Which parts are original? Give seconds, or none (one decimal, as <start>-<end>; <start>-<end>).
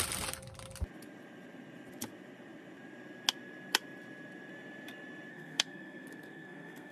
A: 0.0-5.3